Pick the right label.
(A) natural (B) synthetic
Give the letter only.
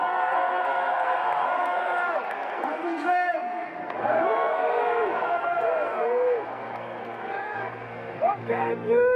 B